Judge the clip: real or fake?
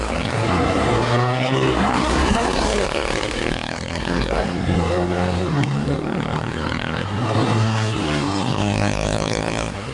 fake